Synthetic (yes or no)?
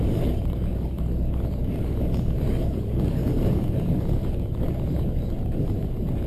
yes